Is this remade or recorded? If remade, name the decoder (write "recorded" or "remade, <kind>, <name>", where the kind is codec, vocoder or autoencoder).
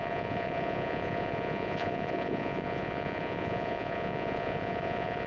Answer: remade, vocoder, Vocos